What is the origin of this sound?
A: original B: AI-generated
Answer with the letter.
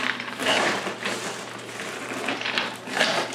B